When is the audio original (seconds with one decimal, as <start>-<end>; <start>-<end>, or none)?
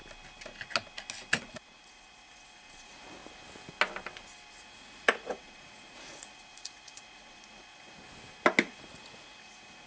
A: 0.0-1.4; 3.2-4.5; 8.0-8.6